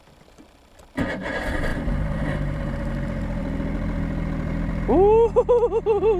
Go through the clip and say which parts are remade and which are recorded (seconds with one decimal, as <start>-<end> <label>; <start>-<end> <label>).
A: 0.0-1.7 recorded; 1.7-2.9 remade; 2.9-6.2 recorded